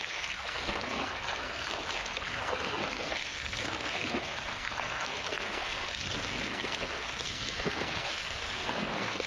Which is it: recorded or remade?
remade